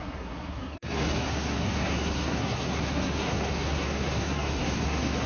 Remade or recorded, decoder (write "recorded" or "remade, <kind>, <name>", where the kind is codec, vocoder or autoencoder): remade, codec, SNAC